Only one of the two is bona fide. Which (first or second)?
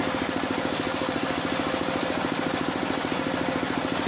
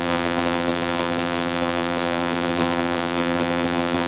first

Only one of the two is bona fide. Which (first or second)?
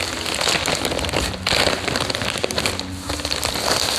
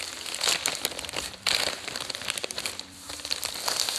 first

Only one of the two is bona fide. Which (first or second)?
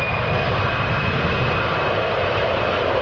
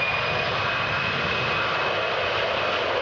second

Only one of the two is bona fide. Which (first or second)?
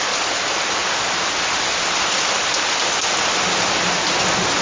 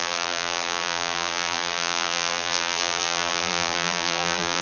first